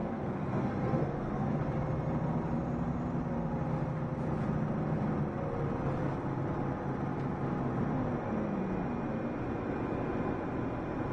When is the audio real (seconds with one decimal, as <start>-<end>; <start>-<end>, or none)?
1.6-11.1